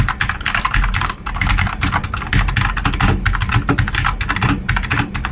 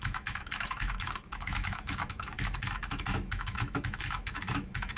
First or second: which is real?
first